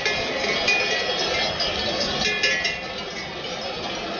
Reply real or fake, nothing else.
real